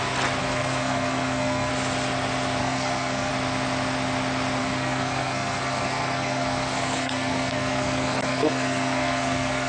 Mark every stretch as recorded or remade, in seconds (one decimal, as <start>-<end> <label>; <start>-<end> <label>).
0.0-0.4 recorded; 0.4-1.7 remade; 1.7-2.6 recorded; 2.6-3.3 remade; 3.3-4.6 recorded; 4.6-9.7 remade